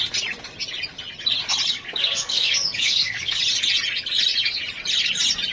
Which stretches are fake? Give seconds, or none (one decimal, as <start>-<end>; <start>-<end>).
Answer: 1.7-3.4

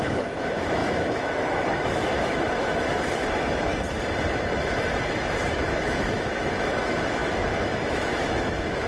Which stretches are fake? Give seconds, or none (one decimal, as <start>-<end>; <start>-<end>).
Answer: 0.0-3.7; 5.5-8.9

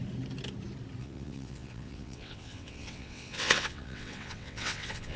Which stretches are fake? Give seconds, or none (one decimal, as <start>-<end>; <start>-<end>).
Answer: 1.0-5.2

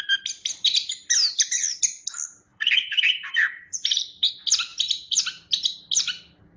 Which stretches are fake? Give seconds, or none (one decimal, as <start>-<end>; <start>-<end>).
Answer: 2.5-4.3; 4.7-5.2

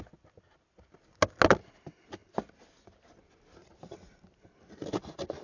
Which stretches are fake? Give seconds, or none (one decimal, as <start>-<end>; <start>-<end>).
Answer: none

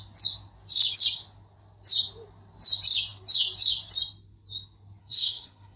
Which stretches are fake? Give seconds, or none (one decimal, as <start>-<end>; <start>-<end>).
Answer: 5.0-5.8

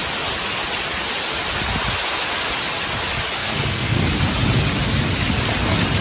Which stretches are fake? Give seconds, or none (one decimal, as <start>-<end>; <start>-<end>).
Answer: 3.4-4.0

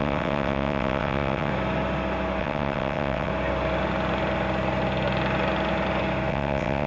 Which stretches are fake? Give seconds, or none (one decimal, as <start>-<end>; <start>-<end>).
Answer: 0.0-1.5; 2.4-3.3; 6.3-6.9